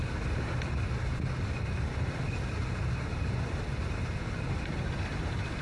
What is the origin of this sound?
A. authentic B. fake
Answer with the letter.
A